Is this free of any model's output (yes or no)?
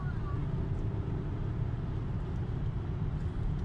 yes